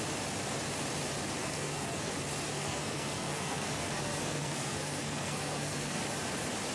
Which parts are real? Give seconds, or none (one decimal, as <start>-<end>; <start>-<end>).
0.0-1.4; 2.1-2.5; 6.0-6.7